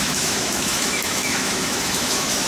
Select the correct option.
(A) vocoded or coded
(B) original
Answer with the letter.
A